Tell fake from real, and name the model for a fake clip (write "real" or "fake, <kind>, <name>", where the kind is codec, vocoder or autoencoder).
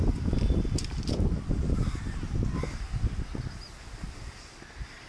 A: fake, vocoder, BigVGAN v2